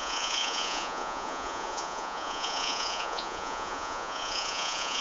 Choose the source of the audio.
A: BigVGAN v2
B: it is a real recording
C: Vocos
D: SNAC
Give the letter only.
C